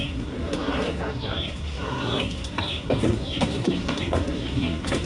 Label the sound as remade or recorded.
remade